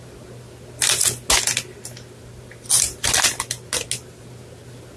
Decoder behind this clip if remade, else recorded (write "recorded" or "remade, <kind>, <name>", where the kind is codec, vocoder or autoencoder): recorded